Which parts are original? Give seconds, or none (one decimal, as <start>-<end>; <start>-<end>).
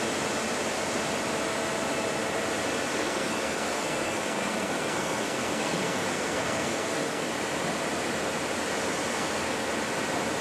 0.0-3.0; 7.3-9.1; 9.7-10.4